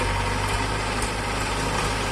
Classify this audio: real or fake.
real